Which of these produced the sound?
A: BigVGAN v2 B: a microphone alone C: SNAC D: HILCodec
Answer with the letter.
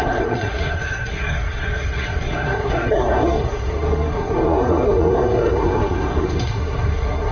C